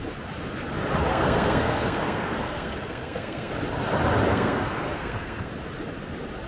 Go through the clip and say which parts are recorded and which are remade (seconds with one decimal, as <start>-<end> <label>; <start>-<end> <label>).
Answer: 0.0-1.1 recorded; 1.1-3.5 remade; 3.5-4.3 recorded; 4.3-5.5 remade; 5.5-6.5 recorded

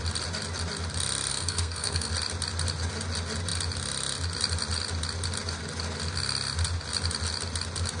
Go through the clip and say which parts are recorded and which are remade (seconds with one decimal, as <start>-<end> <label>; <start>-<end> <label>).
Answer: 0.0-1.3 recorded; 1.3-2.1 remade; 2.1-8.0 recorded